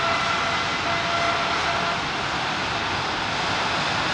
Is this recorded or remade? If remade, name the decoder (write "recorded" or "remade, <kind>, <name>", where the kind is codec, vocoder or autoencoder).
recorded